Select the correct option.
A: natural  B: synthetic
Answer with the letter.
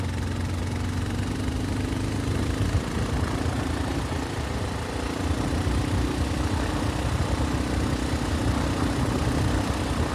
A